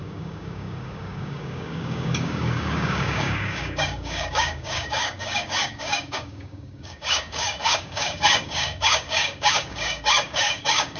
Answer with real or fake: fake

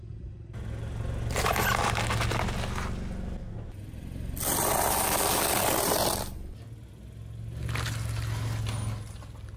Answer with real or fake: real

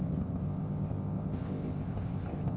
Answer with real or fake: fake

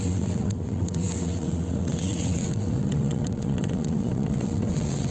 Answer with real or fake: fake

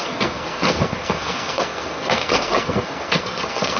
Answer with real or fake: fake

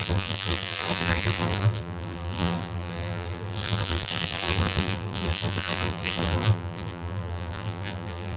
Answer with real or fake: fake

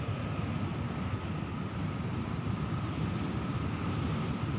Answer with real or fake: real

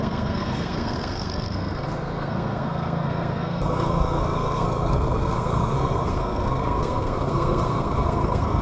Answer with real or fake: fake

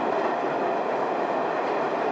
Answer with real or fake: real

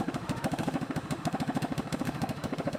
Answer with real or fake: fake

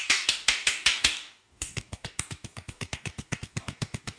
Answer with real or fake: fake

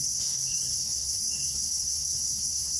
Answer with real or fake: fake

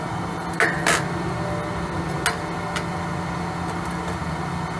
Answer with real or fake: real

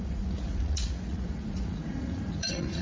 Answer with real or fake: fake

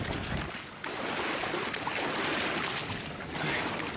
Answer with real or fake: real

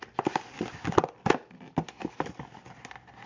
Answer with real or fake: real